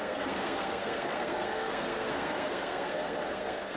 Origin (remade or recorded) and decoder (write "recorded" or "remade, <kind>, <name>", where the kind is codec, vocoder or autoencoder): remade, codec, SNAC